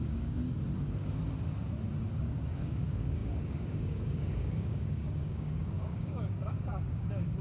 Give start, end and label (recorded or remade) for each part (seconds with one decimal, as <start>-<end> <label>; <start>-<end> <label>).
0.0-0.4 remade; 0.4-2.2 recorded; 2.2-7.4 remade